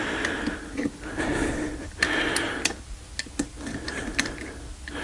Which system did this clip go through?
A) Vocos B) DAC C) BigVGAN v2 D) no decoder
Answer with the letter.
D